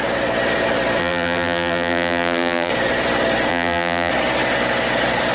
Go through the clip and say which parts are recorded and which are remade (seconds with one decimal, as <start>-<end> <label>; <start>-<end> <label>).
0.0-1.0 recorded; 1.0-2.7 remade; 2.7-3.5 recorded; 3.5-4.1 remade; 4.1-5.3 recorded

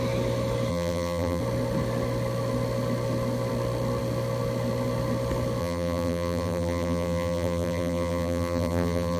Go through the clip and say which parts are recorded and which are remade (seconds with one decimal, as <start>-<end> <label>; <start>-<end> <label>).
0.0-0.7 recorded; 0.7-1.4 remade; 1.4-5.6 recorded; 5.6-9.2 remade

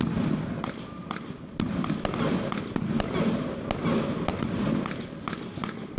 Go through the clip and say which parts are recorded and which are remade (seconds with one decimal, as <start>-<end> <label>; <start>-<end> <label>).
0.0-6.0 recorded

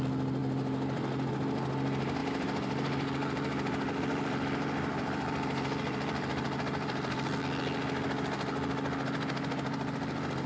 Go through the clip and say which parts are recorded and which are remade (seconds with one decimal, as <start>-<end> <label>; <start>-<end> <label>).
0.0-0.4 recorded; 0.4-1.3 remade; 1.3-2.2 recorded; 2.2-7.4 remade; 7.4-10.5 recorded